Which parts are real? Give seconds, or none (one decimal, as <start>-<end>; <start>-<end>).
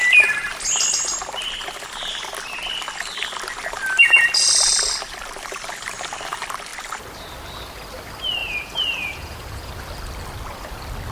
0.0-8.4; 9.7-11.1